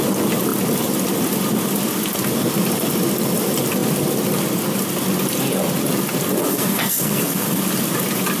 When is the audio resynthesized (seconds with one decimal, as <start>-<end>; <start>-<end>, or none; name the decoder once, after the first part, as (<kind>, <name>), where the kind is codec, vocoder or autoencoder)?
6.5-7.6 (codec, SNAC)